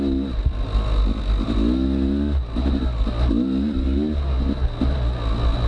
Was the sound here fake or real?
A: real